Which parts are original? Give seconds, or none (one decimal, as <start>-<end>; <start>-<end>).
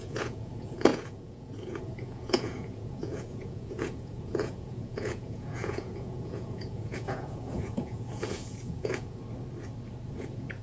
9.2-10.1